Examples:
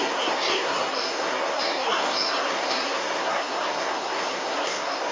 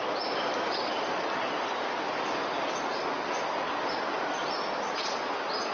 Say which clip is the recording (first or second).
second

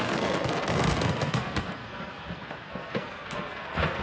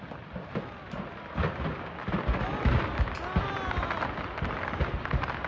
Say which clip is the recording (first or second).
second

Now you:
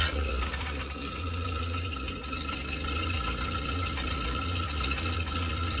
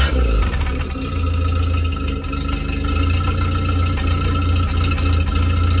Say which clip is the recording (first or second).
second